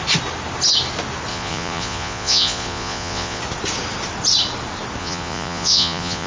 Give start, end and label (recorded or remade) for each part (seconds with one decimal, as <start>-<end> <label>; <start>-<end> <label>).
0.0-1.3 recorded; 1.3-3.4 remade; 3.4-5.0 recorded; 5.0-6.3 remade